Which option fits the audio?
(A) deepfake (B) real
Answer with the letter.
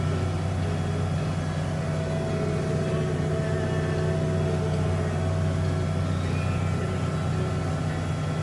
B